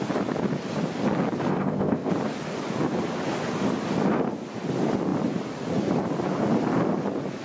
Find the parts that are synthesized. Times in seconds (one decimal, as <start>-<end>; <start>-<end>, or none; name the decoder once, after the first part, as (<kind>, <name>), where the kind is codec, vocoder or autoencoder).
1.5-2.1 (codec, ZipCodec)

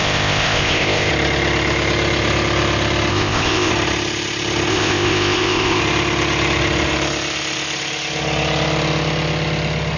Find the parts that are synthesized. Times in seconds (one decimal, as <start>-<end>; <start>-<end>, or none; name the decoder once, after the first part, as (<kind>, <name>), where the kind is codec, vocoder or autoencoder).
0.0-1.1 (codec, ZipCodec); 3.1-3.7; 4.7-5.8

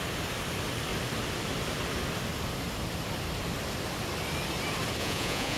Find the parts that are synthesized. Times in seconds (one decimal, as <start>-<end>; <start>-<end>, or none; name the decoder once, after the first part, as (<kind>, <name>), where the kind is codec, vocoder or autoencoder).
5.0-5.6 (vocoder, Vocos)

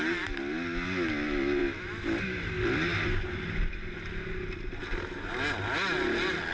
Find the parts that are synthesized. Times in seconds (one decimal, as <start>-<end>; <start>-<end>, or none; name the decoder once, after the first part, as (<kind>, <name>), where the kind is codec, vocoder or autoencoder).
none

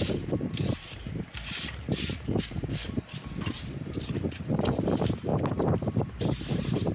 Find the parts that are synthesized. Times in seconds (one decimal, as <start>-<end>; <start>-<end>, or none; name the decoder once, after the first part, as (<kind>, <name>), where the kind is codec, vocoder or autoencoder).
0.0-6.9 (vocoder, BigVGAN v2)